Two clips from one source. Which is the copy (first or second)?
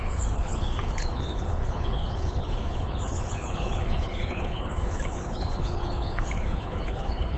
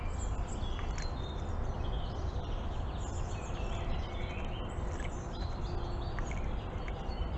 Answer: first